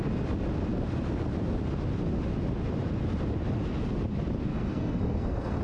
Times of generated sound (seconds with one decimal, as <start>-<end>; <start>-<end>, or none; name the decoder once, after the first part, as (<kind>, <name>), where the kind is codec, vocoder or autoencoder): 4.5-5.6 (codec, SNAC)